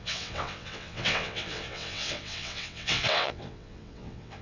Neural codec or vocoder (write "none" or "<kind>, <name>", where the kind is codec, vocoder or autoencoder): vocoder, WaveNeXt